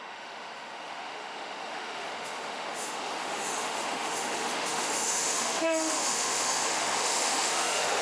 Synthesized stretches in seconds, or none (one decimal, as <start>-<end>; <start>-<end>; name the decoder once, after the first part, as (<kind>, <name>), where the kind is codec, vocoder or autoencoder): 0.0-8.0 (autoencoder, DAC-VAE)